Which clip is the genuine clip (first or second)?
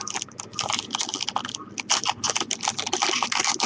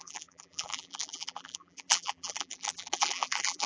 first